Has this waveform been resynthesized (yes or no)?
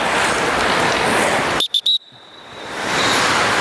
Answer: no